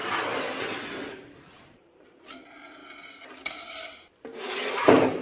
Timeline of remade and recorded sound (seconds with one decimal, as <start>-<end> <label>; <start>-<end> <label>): 0.0-2.8 remade; 2.8-4.1 recorded; 4.1-5.2 remade